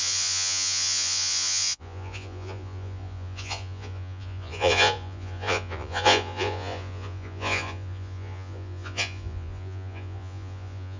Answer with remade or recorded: remade